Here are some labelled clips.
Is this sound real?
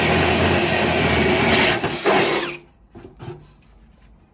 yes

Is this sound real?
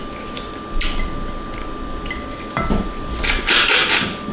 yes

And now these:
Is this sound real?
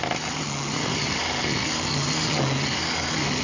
yes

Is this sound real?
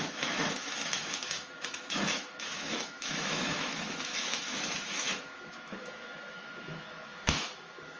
no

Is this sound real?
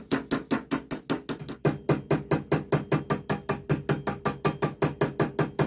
yes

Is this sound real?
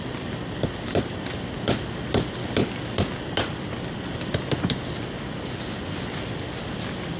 yes